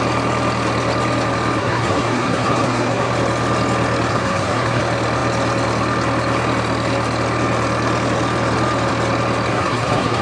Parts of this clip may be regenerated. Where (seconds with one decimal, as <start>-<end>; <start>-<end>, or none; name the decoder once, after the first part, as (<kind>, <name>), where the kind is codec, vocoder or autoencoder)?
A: 1.6-3.1 (codec, SNAC); 4.1-4.8; 9.5-10.2